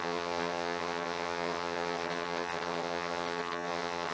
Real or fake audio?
fake